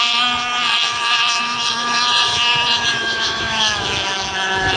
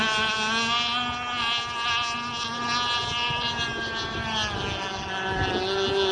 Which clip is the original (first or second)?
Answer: second